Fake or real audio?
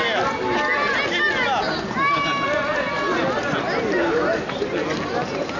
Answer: real